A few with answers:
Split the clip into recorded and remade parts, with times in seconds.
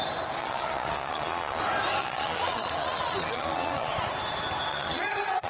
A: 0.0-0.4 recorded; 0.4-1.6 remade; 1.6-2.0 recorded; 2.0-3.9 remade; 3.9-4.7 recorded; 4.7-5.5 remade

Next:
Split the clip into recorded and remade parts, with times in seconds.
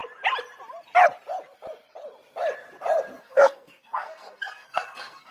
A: 0.0-3.2 recorded; 3.2-5.3 remade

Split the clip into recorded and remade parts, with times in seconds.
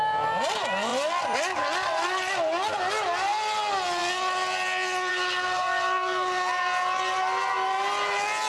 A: 0.0-8.5 recorded